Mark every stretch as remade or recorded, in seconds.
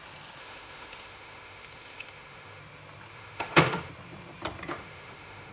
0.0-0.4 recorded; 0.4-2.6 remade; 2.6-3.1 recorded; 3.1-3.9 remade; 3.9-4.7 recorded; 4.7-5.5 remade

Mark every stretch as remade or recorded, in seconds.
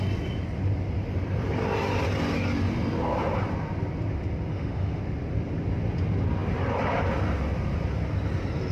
0.0-4.5 recorded; 4.5-5.0 remade; 5.0-8.7 recorded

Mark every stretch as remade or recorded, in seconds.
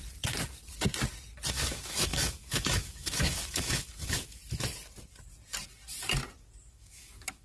0.0-1.5 recorded; 1.5-4.4 remade; 4.4-6.7 recorded; 6.7-7.4 remade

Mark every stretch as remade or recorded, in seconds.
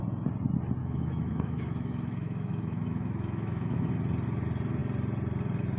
0.0-0.8 recorded; 0.8-3.9 remade; 3.9-5.8 recorded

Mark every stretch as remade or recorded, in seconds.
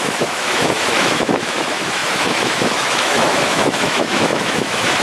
0.0-5.0 remade